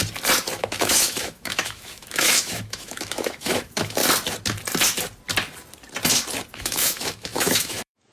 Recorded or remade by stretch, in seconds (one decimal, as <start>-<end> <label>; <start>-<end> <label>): 0.0-0.6 recorded; 0.6-4.0 remade; 4.0-6.5 recorded; 6.5-8.1 remade